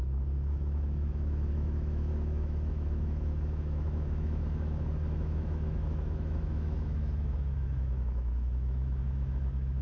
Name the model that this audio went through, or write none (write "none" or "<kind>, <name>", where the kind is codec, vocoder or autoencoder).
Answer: autoencoder, DAC-VAE